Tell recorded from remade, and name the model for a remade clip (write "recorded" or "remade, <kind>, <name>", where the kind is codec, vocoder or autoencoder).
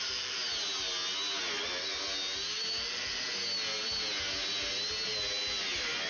recorded